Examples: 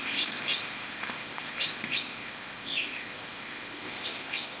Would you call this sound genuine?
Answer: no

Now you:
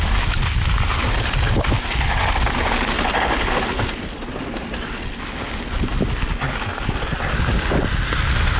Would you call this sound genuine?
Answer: yes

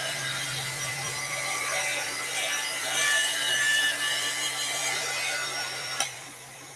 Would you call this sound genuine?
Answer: no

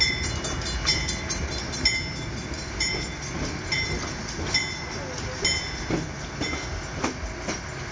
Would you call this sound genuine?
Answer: yes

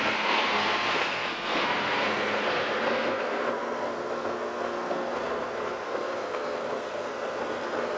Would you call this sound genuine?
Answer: no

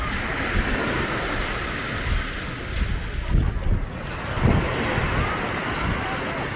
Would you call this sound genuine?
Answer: yes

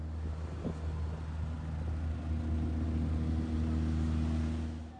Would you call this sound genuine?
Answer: yes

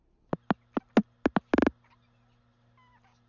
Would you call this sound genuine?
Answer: yes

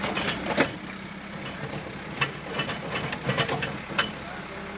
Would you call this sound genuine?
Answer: yes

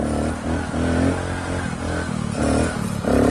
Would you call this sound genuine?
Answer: yes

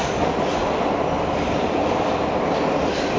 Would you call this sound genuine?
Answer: yes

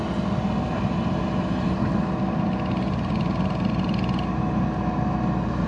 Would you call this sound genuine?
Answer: yes